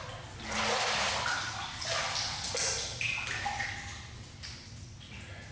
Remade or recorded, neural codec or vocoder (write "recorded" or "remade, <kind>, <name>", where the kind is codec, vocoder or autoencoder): recorded